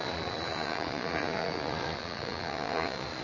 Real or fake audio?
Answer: fake